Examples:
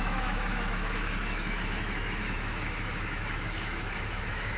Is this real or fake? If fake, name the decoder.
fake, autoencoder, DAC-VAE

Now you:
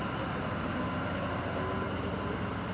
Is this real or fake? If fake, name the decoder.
real